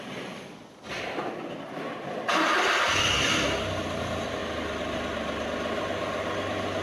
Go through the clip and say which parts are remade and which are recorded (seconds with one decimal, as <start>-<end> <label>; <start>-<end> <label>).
0.0-6.8 recorded